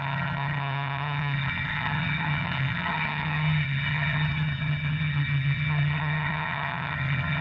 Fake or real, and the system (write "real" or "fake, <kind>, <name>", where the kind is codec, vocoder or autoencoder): fake, vocoder, HiFi-GAN